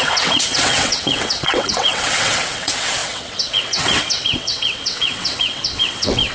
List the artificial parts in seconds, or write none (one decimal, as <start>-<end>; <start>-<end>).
0.0-6.3